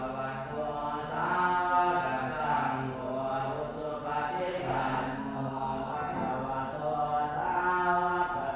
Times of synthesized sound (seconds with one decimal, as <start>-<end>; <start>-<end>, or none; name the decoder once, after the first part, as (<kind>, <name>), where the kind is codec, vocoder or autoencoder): 4.5-6.3 (codec, SNAC)